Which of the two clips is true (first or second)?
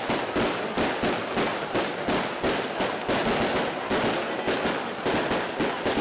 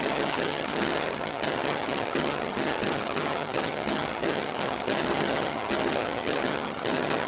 first